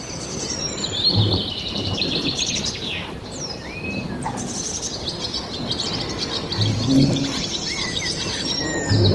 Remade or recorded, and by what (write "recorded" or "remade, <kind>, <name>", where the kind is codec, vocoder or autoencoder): recorded